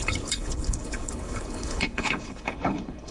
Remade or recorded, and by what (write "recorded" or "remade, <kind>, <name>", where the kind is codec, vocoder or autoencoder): remade, codec, HILCodec